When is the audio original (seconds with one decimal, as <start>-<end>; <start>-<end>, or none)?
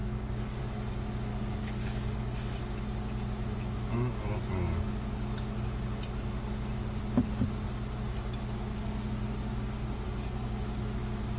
0.6-1.3; 2.2-11.4